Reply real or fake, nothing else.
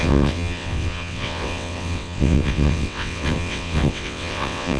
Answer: fake